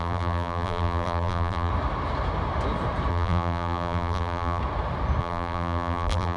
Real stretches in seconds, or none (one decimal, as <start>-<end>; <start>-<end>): 1.7-3.1; 4.6-5.2